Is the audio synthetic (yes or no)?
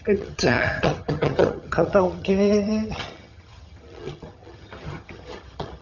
yes